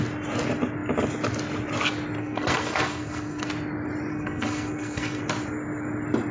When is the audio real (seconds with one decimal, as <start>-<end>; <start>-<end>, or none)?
0.0-2.2; 3.5-4.1; 5.2-6.3